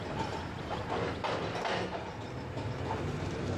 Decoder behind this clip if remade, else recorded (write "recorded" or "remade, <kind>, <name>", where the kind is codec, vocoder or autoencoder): recorded